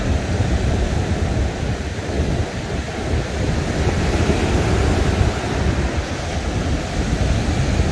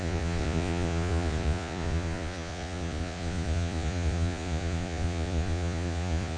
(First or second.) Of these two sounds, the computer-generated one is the second